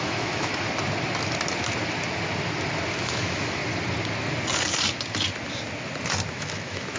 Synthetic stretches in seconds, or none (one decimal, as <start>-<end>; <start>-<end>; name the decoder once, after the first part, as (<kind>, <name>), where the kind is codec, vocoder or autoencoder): 0.0-0.5 (autoencoder, DAC-VAE); 2.9-3.6; 6.3-7.0